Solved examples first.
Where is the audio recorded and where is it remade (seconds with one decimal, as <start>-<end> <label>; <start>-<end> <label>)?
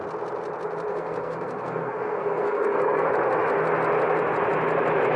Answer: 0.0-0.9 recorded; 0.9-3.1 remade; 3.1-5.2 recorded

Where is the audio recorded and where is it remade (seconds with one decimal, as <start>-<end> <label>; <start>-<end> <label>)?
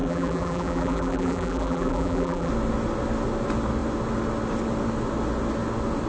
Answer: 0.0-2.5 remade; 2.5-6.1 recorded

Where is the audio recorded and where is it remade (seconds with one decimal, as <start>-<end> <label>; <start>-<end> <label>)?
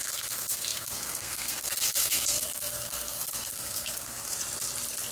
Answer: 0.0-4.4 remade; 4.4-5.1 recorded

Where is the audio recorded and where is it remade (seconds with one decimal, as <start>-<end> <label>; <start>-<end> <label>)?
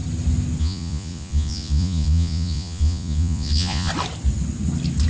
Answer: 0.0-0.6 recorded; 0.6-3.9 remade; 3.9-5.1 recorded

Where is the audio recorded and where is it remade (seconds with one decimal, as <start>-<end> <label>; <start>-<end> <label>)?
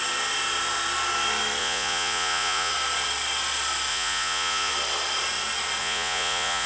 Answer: 0.0-1.6 recorded; 1.6-2.7 remade; 2.7-3.9 recorded; 3.9-4.7 remade; 4.7-5.8 recorded; 5.8-6.7 remade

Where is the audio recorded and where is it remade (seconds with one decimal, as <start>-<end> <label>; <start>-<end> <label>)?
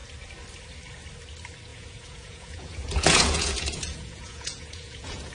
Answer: 0.0-1.7 recorded; 1.7-5.3 remade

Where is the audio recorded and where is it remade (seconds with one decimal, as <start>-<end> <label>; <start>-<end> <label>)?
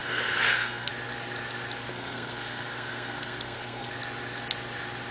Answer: 0.0-0.9 remade; 0.9-1.9 recorded; 1.9-3.9 remade; 3.9-5.1 recorded